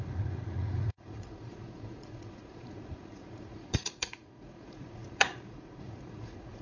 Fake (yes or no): yes